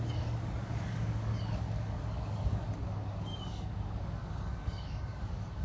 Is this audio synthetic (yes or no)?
yes